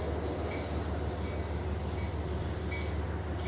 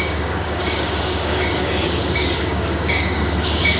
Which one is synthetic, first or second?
second